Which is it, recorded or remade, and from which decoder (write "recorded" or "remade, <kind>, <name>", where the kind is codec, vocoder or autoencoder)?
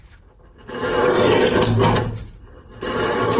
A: recorded